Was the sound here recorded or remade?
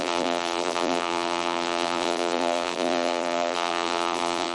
remade